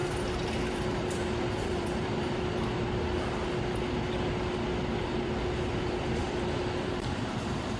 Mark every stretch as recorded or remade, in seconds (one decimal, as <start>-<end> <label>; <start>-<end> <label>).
0.0-0.7 recorded; 0.7-2.1 remade; 2.1-6.8 recorded; 6.8-7.8 remade